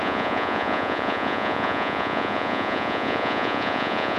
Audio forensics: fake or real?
fake